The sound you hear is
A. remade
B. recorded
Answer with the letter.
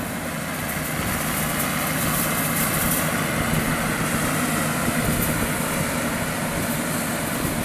B